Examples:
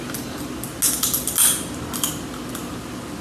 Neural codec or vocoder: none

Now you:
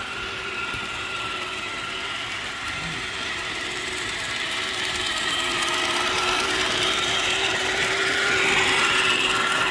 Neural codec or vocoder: vocoder, BigVGAN v2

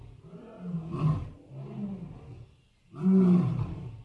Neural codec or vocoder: none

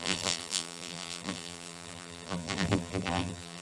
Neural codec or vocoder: vocoder, BigVGAN v2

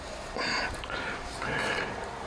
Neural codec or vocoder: vocoder, BigVGAN v2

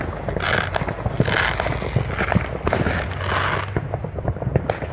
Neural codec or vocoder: none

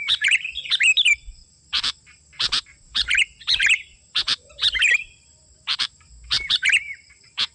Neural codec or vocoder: vocoder, BigVGAN v2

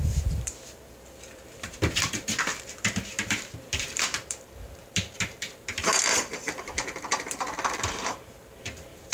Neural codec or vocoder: vocoder, BigVGAN v2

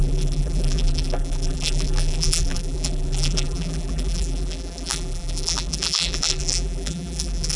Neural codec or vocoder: vocoder, BigVGAN v2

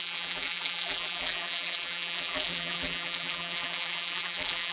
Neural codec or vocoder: vocoder, BigVGAN v2